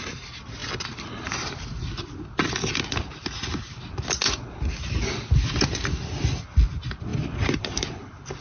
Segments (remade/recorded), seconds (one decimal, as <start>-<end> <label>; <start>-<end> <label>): 0.0-8.4 recorded